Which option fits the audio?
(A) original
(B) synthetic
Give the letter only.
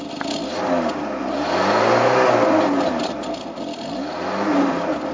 A